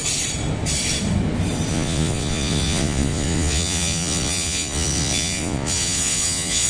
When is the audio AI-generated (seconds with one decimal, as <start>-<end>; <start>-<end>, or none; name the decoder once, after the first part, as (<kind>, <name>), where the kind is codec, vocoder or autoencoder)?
1.7-6.7 (vocoder, Vocos)